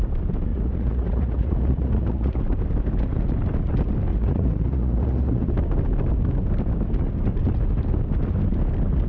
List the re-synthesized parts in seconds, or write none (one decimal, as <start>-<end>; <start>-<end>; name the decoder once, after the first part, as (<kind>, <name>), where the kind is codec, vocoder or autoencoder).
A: 0.5-2.4 (vocoder, Vocos); 4.1-5.5